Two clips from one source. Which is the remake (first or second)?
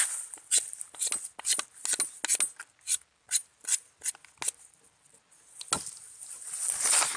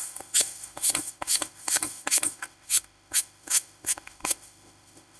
second